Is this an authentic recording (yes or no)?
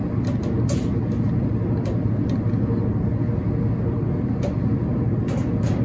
yes